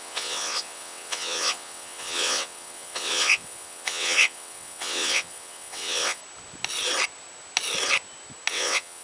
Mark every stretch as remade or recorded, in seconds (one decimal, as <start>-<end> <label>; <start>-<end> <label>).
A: 0.0-6.2 remade; 6.2-8.5 recorded; 8.5-9.0 remade